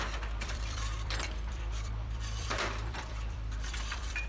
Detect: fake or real fake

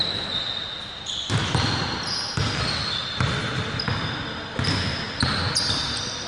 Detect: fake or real real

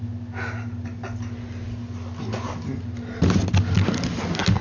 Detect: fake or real real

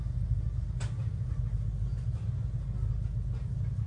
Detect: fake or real real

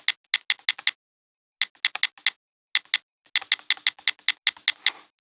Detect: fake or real real